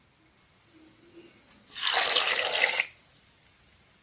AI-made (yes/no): no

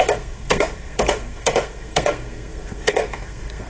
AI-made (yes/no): yes